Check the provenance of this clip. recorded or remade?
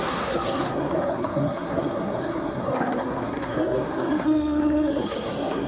remade